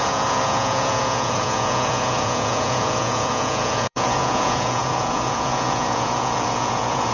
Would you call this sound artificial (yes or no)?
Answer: yes